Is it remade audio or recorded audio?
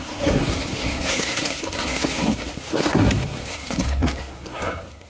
remade